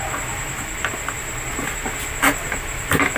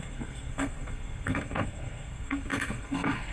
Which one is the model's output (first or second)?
second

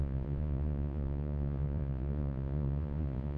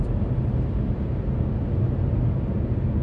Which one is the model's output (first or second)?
first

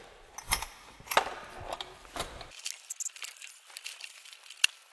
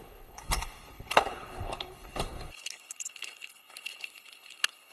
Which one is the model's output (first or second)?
second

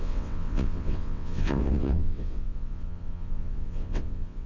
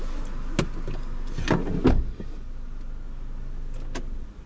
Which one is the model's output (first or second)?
first